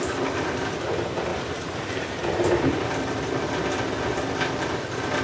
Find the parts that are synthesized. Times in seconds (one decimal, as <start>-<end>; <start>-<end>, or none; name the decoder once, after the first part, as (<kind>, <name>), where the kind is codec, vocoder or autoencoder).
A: none